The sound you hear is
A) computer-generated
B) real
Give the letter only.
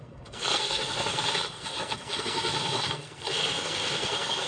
A